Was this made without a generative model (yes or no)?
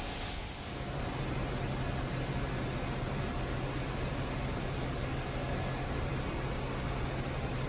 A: yes